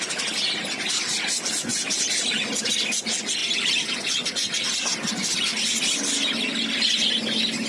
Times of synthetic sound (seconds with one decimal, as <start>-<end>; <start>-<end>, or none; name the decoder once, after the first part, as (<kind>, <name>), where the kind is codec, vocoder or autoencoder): none